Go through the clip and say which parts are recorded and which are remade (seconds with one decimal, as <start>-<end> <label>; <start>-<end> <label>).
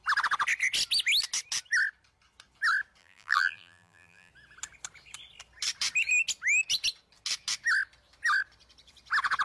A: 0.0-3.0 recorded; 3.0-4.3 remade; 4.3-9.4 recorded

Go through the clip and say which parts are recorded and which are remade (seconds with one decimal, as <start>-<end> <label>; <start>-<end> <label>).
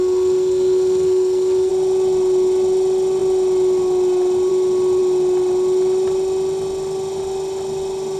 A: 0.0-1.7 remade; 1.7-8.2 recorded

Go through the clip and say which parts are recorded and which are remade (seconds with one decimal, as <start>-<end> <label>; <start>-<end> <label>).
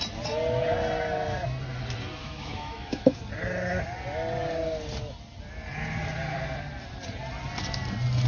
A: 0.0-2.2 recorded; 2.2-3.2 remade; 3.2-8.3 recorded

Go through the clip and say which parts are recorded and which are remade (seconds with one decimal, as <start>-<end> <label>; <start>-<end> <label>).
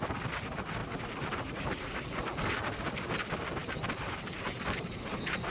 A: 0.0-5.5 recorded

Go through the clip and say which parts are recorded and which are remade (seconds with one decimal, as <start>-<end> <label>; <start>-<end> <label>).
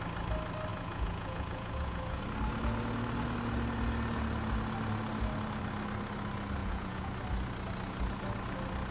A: 0.0-0.7 recorded; 0.7-2.2 remade; 2.2-6.6 recorded; 6.6-7.1 remade; 7.1-8.9 recorded